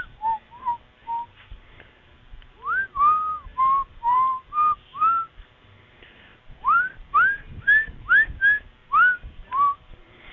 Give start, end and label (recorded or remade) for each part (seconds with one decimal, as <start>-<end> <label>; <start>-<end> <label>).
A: 0.0-3.5 recorded; 3.5-4.5 remade; 4.5-6.3 recorded; 6.3-6.8 remade; 6.8-8.8 recorded; 8.8-10.3 remade